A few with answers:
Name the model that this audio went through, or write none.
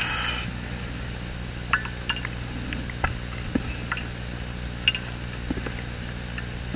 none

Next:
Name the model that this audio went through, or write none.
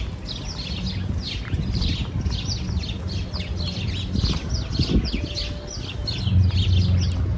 none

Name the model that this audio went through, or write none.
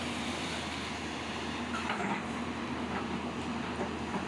vocoder, BigVGAN v2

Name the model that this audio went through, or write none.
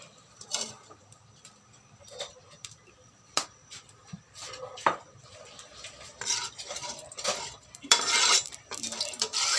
vocoder, BigVGAN v2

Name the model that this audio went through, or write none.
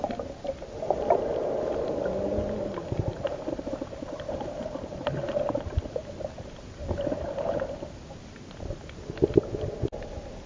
none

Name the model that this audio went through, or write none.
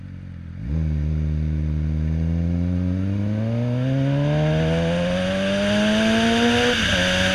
none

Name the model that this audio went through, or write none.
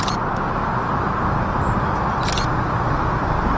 none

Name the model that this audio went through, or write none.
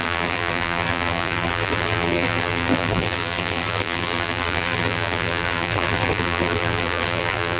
vocoder, BigVGAN v2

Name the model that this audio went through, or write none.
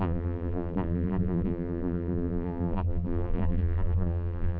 vocoder, BigVGAN v2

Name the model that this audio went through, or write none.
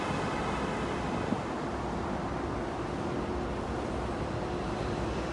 none